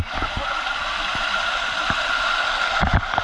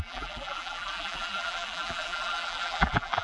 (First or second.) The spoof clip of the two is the second